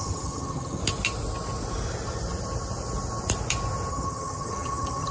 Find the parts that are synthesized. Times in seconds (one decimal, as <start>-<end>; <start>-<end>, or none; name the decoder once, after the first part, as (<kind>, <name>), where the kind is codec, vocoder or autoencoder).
0.0-0.8 (vocoder, HiFi-GAN); 3.9-5.1